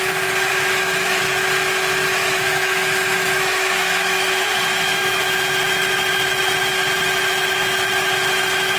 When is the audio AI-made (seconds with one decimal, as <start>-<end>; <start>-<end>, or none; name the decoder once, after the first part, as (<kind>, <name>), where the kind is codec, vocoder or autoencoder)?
0.5-1.2 (autoencoder, DAC-VAE); 2.2-5.3